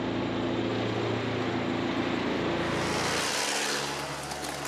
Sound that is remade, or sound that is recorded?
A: recorded